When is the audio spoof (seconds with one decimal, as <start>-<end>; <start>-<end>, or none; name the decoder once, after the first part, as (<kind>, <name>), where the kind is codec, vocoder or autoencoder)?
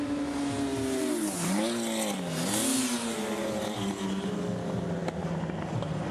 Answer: 2.7-4.4 (vocoder, BigVGAN v2)